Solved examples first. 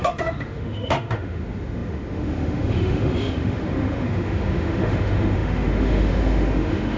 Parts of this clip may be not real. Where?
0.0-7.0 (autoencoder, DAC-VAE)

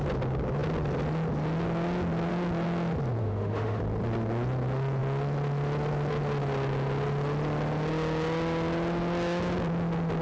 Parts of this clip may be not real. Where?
3.2-3.8 (autoencoder, DAC-VAE)

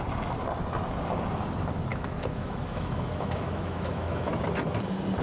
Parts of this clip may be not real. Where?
1.9-4.4 (autoencoder, DAC-VAE)

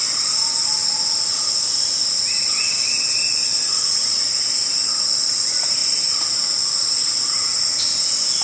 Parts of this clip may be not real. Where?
none

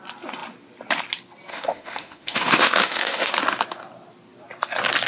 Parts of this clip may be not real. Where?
1.5-3.3 (autoencoder, DAC-VAE)

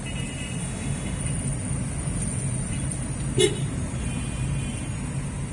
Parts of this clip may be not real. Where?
0.6-1.2 (autoencoder, DAC-VAE)

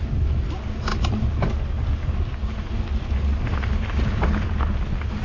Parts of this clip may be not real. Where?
none